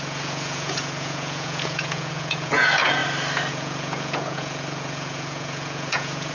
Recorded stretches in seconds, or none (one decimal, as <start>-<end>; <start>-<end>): 3.0-3.5